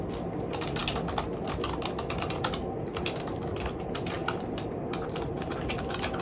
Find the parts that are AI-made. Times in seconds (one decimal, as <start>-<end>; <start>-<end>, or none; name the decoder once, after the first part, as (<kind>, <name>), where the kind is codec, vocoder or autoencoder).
4.2-5.5 (vocoder, BigVGAN v2)